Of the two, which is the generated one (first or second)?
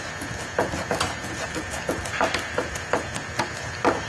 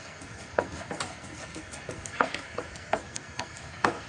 second